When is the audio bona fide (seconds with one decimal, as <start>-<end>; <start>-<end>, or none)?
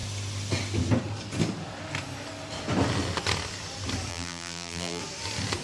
0.0-4.1; 5.0-5.6